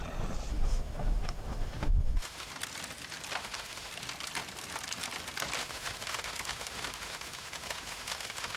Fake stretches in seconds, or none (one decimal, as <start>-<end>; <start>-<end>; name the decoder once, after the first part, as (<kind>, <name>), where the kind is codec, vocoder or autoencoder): 0.5-2.5 (autoencoder, DAC-VAE); 3.4-3.9; 5.6-8.6